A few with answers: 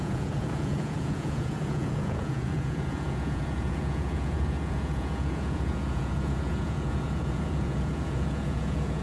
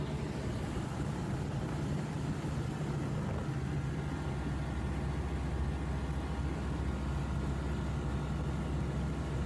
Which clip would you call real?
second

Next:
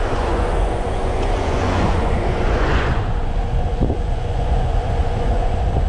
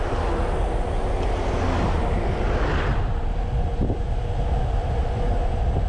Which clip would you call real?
second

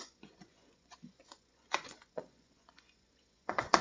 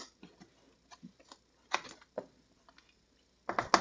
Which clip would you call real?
second